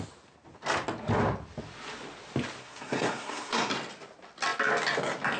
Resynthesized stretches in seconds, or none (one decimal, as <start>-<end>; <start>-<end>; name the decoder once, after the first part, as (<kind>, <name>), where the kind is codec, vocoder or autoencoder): 2.6-3.7 (codec, SNAC)